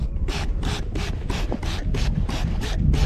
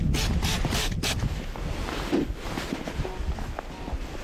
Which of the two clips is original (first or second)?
second